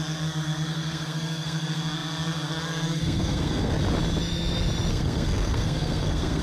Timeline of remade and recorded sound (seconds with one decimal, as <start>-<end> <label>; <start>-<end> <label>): 0.0-3.8 remade; 3.8-4.9 recorded; 4.9-6.4 remade